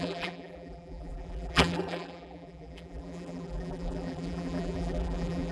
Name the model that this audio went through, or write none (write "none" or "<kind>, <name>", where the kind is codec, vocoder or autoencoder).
vocoder, BigVGAN v2